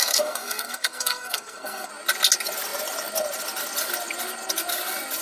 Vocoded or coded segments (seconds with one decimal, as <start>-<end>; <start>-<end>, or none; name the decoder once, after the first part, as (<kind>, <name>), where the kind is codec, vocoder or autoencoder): 0.0-1.9 (codec, SNAC)